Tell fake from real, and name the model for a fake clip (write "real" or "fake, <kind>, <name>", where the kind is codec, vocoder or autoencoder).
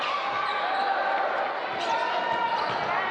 real